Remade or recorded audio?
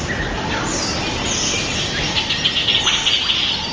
recorded